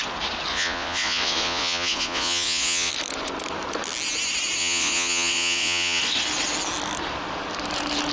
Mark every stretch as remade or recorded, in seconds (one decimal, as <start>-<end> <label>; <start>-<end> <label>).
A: 0.0-0.5 recorded; 0.5-2.9 remade; 2.9-4.6 recorded; 4.6-6.0 remade; 6.0-8.1 recorded